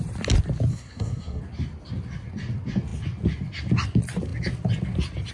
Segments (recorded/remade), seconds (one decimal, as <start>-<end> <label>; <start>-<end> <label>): 0.0-0.7 recorded; 0.7-1.4 remade; 1.4-5.3 recorded